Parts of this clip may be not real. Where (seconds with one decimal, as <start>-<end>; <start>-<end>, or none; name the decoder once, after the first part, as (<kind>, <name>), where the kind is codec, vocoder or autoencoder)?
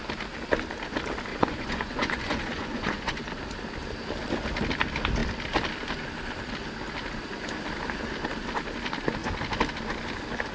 1.3-3.2 (vocoder, Vocos)